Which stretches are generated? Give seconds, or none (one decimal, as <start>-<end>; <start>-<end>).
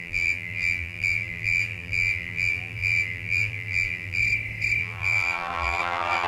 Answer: 0.0-4.2; 4.8-6.3